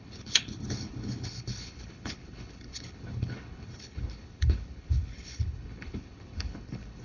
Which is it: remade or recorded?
remade